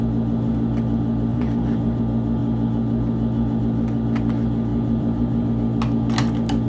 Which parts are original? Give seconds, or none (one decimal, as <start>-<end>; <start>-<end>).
0.0-1.3; 2.0-4.7; 5.5-6.7